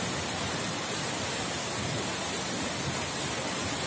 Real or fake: real